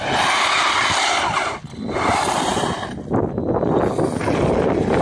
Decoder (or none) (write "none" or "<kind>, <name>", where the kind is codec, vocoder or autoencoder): none